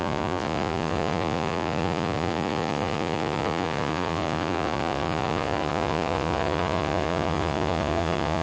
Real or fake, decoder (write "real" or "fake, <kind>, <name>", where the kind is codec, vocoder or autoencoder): fake, vocoder, Vocos